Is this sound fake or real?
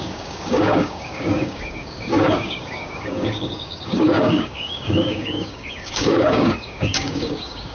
fake